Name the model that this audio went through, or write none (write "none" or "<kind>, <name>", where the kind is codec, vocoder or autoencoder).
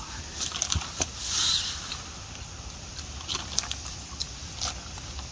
none